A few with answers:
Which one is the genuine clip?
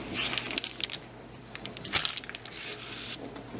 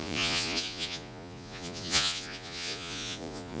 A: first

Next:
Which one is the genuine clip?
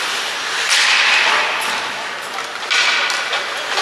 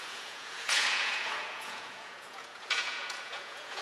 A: first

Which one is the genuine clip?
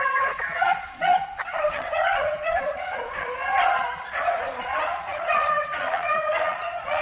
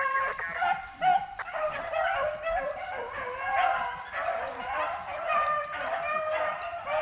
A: second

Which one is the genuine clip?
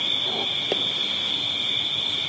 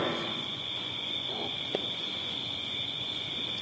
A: first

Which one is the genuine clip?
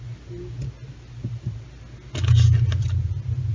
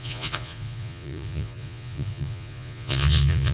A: first